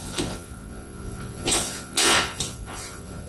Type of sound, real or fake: fake